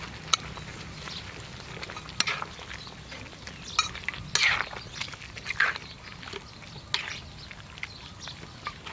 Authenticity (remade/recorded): recorded